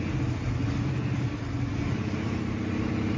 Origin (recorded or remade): recorded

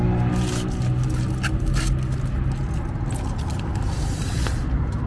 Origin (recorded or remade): recorded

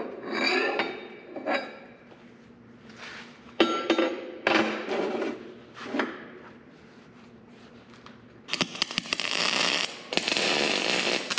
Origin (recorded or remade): recorded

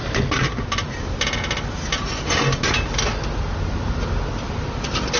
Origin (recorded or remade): recorded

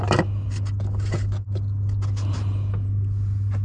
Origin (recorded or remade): recorded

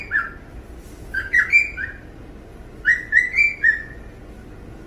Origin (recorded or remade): recorded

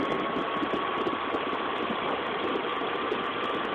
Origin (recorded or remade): recorded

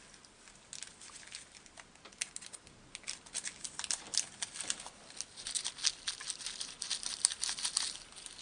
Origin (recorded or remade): recorded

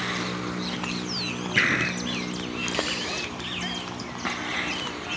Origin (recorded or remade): recorded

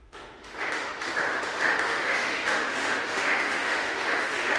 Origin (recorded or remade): remade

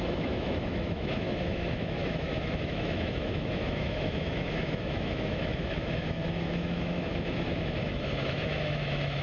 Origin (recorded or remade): remade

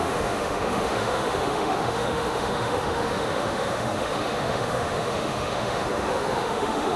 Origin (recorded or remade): remade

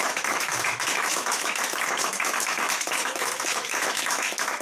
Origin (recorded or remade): remade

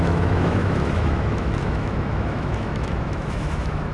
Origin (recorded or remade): remade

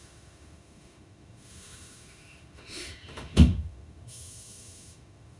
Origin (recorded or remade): remade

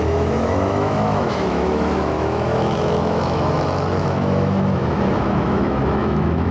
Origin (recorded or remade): remade